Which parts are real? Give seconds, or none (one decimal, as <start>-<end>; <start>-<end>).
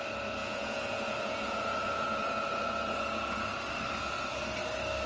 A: 0.0-0.4; 3.5-5.1